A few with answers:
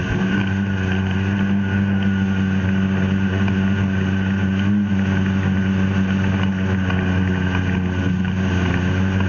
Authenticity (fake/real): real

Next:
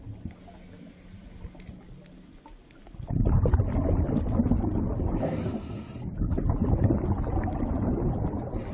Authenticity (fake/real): real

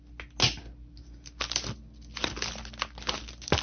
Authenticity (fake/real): real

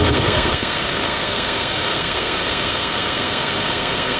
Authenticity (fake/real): fake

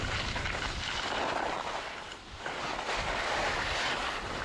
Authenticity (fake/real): real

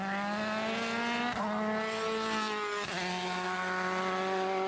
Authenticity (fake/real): real